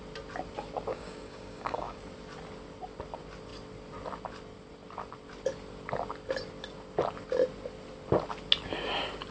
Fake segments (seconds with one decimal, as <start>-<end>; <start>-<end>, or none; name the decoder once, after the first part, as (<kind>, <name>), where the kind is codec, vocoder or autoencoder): 0.9-2.0 (codec, DAC)